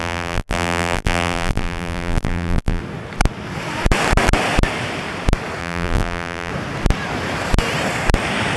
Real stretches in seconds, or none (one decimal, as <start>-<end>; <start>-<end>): 2.8-5.6; 6.5-8.6